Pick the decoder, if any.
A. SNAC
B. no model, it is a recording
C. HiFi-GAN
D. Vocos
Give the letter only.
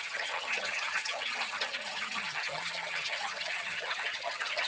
C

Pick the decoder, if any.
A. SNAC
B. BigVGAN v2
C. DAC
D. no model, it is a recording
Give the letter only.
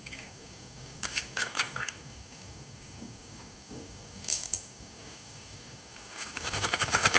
C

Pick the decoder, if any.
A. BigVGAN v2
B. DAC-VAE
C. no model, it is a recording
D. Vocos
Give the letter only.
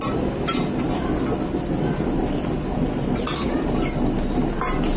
C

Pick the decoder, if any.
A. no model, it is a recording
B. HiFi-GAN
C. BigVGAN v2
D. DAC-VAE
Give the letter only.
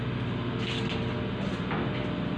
A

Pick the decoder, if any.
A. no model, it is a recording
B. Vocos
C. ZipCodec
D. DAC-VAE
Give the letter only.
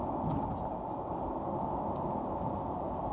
A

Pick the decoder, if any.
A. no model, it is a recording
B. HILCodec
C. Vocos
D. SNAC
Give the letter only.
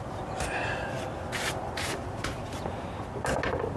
A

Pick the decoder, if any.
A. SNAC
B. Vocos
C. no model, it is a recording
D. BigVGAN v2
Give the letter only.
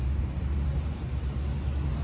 C